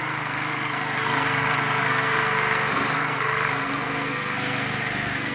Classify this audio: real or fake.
fake